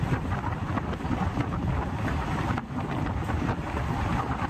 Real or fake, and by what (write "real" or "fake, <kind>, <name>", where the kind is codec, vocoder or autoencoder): real